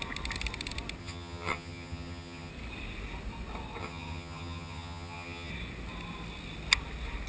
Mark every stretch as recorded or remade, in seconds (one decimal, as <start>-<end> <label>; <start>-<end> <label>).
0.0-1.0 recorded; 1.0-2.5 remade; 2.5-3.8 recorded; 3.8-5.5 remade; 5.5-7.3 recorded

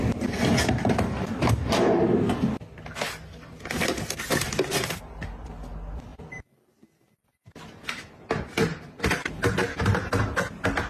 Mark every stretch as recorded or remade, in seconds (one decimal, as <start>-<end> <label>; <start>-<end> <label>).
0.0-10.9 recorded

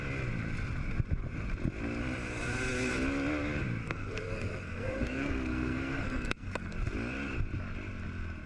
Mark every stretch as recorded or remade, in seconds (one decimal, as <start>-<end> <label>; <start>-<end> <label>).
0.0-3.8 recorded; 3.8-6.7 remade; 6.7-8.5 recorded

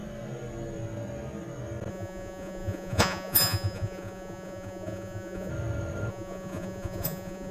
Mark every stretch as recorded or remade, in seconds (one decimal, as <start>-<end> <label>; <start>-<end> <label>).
0.0-1.9 recorded; 1.9-5.5 remade; 5.5-6.1 recorded; 6.1-7.5 remade

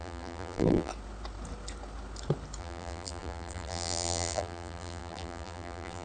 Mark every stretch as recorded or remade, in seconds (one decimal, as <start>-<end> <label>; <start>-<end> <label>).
0.0-0.9 remade; 0.9-2.6 recorded; 2.6-6.0 remade

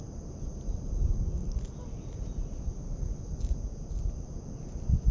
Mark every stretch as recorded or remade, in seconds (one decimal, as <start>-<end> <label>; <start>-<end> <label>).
0.0-5.1 recorded